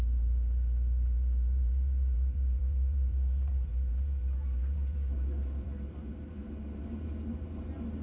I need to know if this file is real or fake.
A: fake